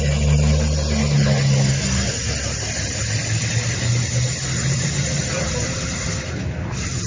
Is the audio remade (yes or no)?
no